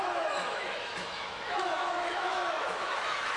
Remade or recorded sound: remade